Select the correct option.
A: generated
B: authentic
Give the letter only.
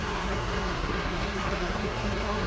A